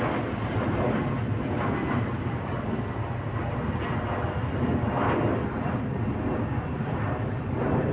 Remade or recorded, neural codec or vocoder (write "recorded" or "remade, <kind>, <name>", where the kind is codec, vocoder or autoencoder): recorded